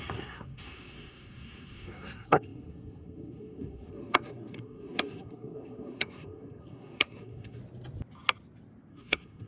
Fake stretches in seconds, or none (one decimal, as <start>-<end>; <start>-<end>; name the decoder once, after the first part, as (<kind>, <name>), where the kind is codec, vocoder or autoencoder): 0.0-7.6 (codec, SNAC); 8.9-9.5